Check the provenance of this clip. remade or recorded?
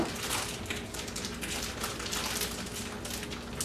recorded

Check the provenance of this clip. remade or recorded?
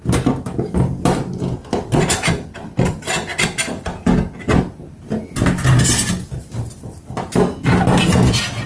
recorded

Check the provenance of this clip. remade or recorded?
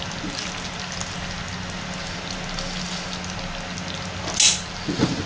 recorded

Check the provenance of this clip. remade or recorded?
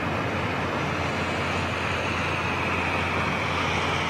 recorded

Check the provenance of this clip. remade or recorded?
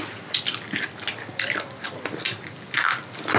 recorded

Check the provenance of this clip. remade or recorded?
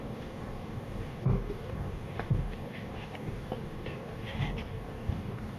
remade